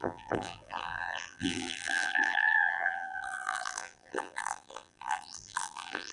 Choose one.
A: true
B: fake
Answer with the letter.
B